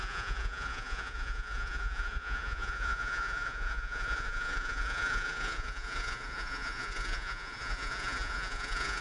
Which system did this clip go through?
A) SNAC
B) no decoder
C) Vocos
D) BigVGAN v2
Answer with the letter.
C